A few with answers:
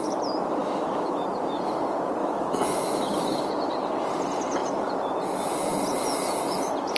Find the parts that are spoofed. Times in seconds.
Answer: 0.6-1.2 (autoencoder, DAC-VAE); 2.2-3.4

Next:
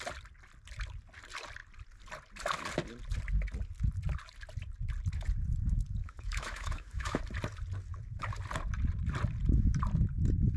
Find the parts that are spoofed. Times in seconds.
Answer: 6.0-7.2 (autoencoder, DAC-VAE)

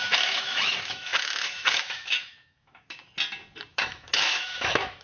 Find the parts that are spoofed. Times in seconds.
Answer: 0.0-3.0 (autoencoder, DAC-VAE); 3.7-5.0

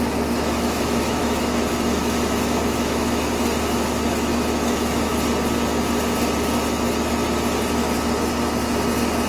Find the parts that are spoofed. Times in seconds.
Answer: 0.0-5.1 (autoencoder, DAC-VAE)

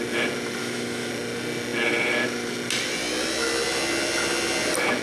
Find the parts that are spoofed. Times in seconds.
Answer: 0.6-1.1 (autoencoder, DAC-VAE)

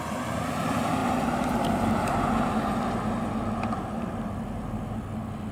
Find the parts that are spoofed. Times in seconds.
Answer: none